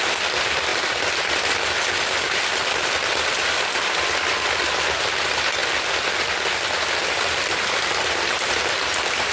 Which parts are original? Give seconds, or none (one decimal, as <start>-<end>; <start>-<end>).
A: 5.6-7.1

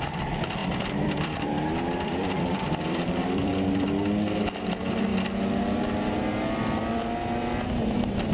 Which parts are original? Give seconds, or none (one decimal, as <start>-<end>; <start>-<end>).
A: 3.5-4.6; 5.1-8.3

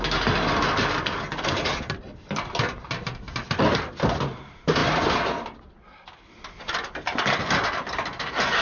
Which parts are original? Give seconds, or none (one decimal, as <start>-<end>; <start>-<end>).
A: 0.0-1.7; 3.9-8.6

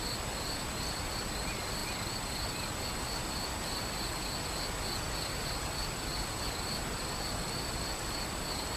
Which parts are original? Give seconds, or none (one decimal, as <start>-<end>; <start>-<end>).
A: 0.0-3.2; 3.8-5.8; 6.4-8.8